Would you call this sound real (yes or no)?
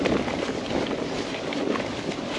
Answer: yes